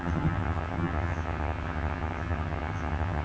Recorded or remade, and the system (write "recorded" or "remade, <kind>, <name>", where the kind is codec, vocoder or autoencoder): remade, vocoder, HiFi-GAN